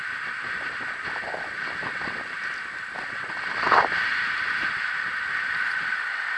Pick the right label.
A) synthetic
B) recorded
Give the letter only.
B